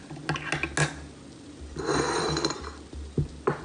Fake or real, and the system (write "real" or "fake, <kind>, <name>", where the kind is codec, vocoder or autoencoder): real